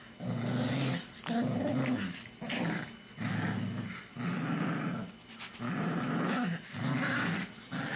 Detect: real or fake real